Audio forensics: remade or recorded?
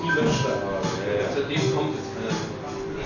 recorded